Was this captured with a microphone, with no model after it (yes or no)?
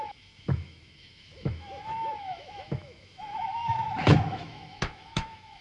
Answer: no